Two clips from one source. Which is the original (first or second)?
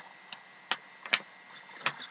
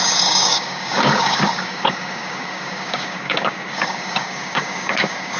first